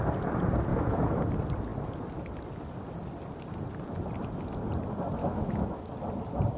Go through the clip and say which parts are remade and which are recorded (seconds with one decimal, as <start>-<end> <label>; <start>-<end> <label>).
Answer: 0.0-0.7 recorded; 0.7-1.2 remade; 1.2-5.2 recorded; 5.2-5.9 remade; 5.9-6.6 recorded